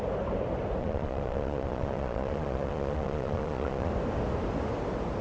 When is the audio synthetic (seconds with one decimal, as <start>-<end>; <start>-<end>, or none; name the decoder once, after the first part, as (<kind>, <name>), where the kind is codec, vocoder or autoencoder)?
0.8-3.9 (vocoder, Vocos)